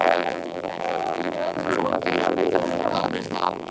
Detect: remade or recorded remade